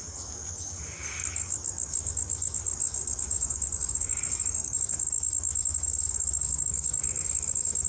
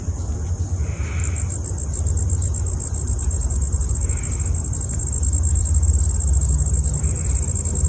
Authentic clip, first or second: second